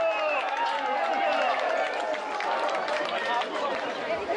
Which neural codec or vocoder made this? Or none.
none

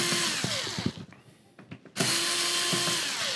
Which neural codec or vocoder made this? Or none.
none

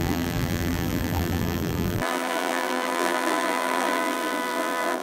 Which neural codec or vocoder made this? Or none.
vocoder, BigVGAN v2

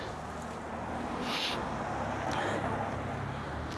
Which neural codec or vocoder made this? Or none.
none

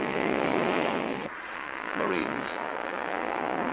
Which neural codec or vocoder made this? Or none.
vocoder, Vocos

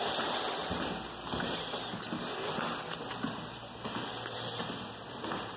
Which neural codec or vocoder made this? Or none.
none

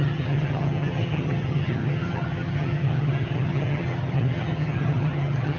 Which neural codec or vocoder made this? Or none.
vocoder, HiFi-GAN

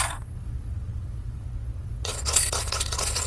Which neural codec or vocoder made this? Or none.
vocoder, Vocos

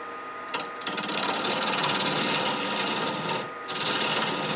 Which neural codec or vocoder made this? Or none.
none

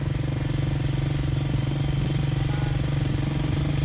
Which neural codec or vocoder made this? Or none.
none